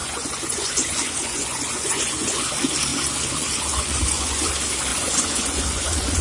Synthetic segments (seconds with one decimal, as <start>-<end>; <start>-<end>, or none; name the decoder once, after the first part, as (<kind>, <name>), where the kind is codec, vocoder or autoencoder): 0.0-2.5 (vocoder, Vocos); 2.9-4.5; 4.9-6.2